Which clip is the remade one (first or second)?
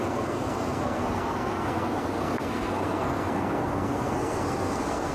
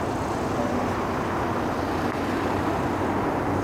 first